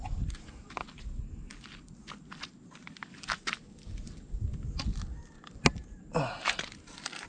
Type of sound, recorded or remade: recorded